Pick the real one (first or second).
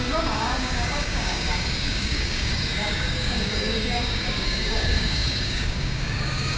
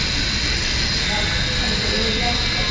second